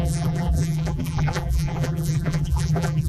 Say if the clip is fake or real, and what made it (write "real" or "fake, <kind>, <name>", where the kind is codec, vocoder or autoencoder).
fake, vocoder, BigVGAN v2